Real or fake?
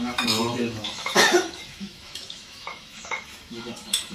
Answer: fake